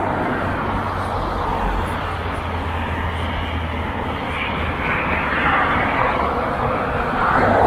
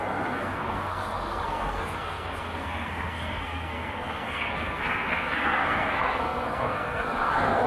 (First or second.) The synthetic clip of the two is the second